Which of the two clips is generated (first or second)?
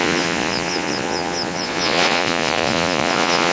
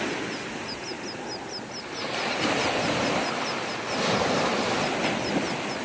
first